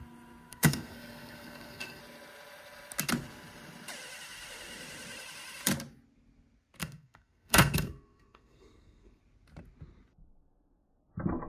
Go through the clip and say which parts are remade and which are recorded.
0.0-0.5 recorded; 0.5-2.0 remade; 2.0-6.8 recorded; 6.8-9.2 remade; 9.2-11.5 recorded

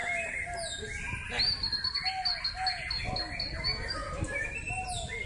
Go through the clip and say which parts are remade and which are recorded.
0.0-5.3 recorded